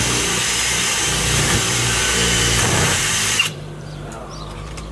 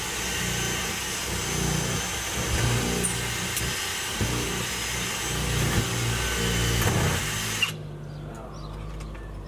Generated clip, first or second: first